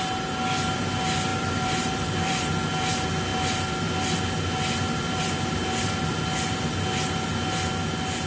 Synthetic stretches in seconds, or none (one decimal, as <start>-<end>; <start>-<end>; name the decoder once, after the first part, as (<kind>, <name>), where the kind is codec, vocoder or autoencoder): 1.3-2.5 (vocoder, BigVGAN v2)